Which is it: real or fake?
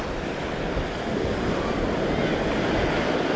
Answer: real